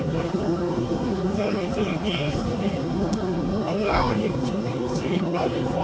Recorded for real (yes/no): no